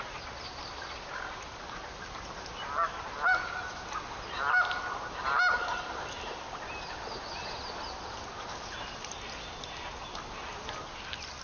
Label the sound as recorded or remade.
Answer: recorded